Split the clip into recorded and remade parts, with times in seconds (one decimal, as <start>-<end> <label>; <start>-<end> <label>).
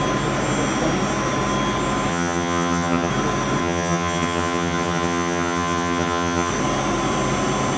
0.0-2.1 recorded; 2.1-3.1 remade; 3.1-3.6 recorded; 3.6-6.5 remade; 6.5-7.8 recorded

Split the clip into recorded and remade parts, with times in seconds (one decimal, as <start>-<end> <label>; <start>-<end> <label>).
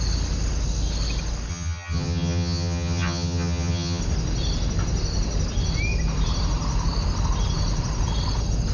0.0-1.5 recorded; 1.5-4.0 remade; 4.0-8.7 recorded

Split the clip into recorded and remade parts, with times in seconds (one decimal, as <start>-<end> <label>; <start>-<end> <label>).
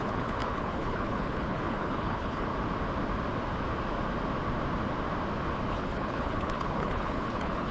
0.0-2.5 remade; 2.5-5.7 recorded; 5.7-7.7 remade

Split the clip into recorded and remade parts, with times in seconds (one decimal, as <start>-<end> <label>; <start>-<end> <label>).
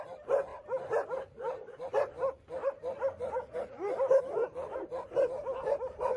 0.0-4.8 recorded; 4.8-5.4 remade; 5.4-6.2 recorded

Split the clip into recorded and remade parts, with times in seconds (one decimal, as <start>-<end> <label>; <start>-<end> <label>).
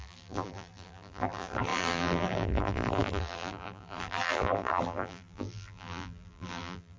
0.0-7.0 remade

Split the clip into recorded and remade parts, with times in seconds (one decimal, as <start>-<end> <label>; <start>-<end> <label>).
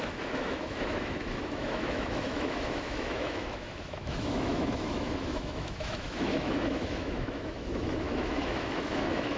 0.0-9.4 remade